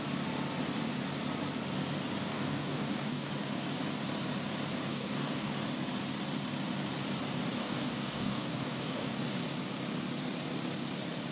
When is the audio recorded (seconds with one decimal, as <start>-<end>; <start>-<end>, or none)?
0.0-2.3; 3.3-4.9; 5.5-7.6; 9.2-11.3